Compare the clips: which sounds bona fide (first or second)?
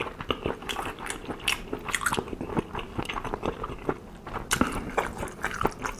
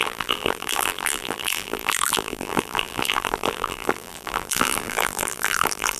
first